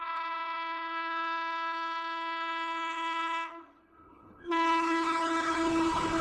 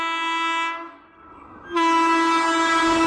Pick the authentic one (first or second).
second